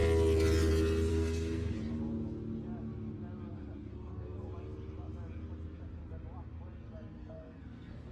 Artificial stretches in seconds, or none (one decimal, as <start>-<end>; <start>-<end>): 1.1-1.8; 3.9-4.5; 7.2-8.1